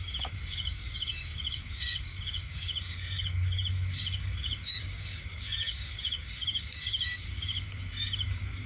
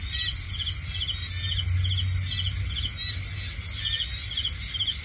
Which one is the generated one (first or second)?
first